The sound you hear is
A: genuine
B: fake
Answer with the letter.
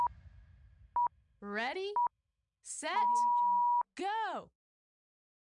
A